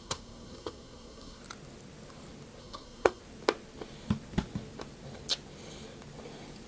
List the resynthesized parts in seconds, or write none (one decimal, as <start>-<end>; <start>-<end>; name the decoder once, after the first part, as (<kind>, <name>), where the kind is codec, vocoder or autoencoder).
0.0-1.4 (codec, SNAC); 2.6-3.2